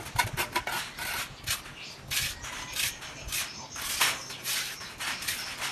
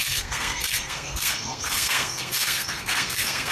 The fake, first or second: second